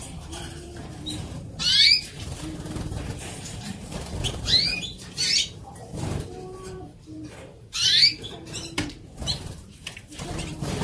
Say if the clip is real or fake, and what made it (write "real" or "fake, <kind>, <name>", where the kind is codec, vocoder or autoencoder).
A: fake, vocoder, BigVGAN v2